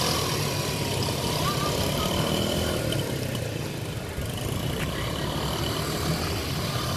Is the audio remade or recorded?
recorded